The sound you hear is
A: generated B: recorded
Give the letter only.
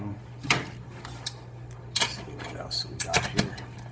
B